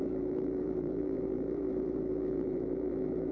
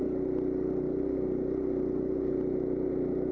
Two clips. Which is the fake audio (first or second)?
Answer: first